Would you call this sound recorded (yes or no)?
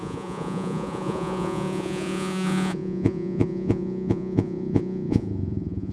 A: no